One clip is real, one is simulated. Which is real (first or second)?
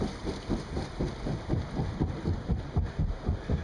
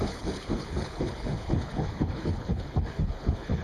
first